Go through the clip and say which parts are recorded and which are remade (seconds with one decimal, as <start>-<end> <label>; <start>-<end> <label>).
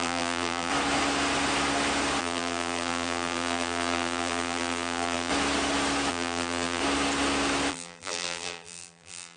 0.0-0.7 remade; 0.7-2.2 recorded; 2.2-5.3 remade; 5.3-6.1 recorded; 6.1-6.8 remade; 6.8-7.7 recorded; 7.7-9.4 remade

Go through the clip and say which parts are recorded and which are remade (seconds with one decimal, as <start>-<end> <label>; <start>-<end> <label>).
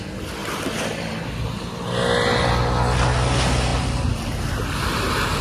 0.0-5.4 recorded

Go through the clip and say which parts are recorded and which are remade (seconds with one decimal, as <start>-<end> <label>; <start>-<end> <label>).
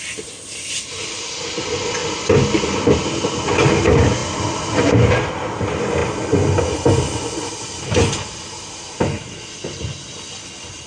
0.0-10.9 recorded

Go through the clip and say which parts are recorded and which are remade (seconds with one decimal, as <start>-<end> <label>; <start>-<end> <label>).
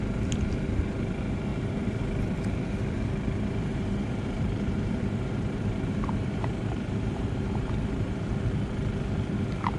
0.0-1.5 recorded; 1.5-2.0 remade; 2.0-3.7 recorded; 3.7-8.3 remade; 8.3-9.8 recorded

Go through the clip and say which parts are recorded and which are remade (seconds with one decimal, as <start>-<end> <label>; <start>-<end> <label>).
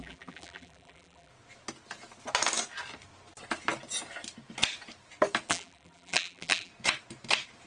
0.0-1.3 remade; 1.3-5.5 recorded; 5.5-6.7 remade; 6.7-7.7 recorded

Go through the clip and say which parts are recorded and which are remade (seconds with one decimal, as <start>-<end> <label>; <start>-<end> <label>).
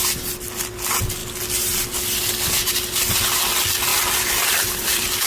0.0-3.9 recorded; 3.9-5.3 remade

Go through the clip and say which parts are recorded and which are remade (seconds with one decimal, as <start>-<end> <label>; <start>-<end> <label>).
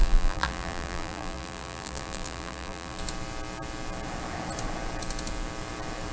0.0-3.0 remade; 3.0-6.1 recorded